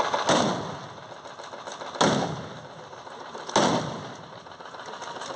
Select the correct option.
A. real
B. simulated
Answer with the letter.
A